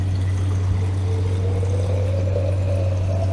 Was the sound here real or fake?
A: real